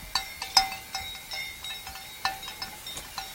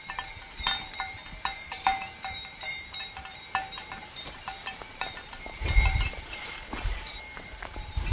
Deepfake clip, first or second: second